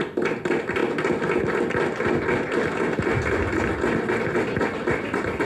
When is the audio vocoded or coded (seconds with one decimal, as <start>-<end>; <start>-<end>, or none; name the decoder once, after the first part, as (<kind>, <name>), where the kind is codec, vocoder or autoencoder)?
none